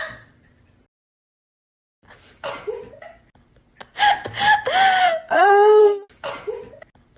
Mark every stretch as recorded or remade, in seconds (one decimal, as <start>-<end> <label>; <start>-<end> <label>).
0.0-5.0 recorded; 5.0-5.8 remade; 5.8-7.2 recorded